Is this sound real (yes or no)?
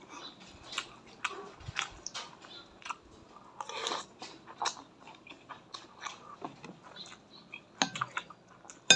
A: yes